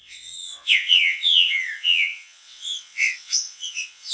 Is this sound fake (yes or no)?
yes